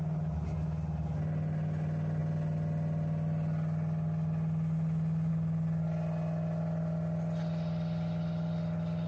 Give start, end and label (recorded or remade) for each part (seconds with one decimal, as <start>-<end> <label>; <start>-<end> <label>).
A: 0.0-9.1 recorded